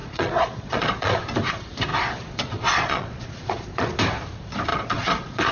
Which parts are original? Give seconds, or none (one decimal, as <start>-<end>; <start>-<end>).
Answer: 1.2-1.9; 4.0-4.7